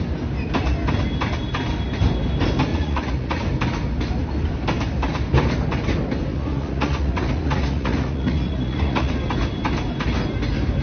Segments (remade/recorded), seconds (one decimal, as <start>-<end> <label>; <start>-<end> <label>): 0.0-2.7 recorded; 2.7-3.4 remade; 3.4-6.3 recorded; 6.3-9.1 remade; 9.1-10.8 recorded